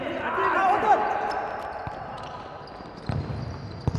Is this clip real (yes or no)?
yes